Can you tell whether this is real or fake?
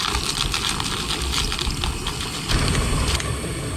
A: real